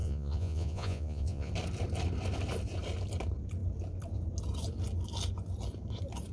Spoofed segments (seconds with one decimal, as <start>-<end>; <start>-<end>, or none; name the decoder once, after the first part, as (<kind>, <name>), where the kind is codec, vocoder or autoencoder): 0.0-1.5 (vocoder, Vocos)